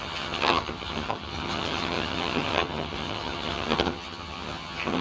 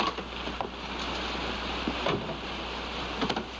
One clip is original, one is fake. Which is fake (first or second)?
first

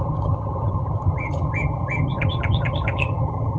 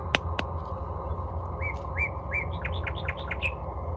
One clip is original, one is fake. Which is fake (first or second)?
first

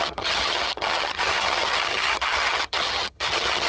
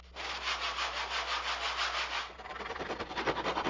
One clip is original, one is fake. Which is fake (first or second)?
first